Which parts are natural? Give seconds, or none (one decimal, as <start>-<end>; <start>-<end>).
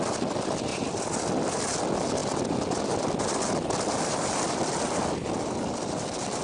0.0-2.2; 5.9-6.4